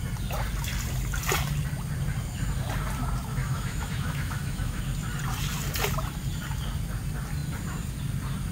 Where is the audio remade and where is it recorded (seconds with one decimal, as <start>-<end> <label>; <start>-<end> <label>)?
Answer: 0.0-3.3 recorded; 3.3-4.8 remade; 4.8-8.5 recorded